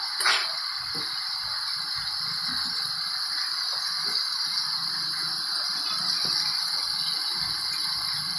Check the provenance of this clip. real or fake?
real